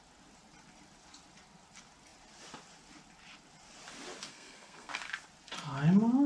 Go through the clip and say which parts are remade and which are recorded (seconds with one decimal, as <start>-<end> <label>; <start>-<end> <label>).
0.0-4.3 recorded; 4.3-4.9 remade; 4.9-6.3 recorded